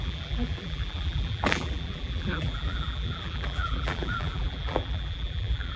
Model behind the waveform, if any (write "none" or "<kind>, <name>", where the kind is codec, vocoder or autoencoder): vocoder, BigVGAN v2